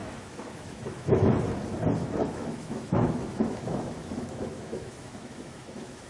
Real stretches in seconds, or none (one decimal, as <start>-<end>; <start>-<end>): 1.3-2.0

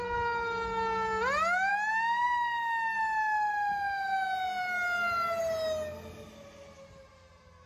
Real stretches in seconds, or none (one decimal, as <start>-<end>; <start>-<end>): 0.0-7.7